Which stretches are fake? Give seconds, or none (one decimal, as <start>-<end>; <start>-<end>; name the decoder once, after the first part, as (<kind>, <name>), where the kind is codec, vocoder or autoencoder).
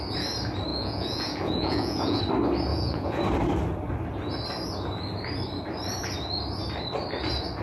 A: 0.7-2.2 (vocoder, Vocos); 2.7-3.2